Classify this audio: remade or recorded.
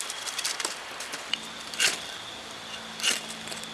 remade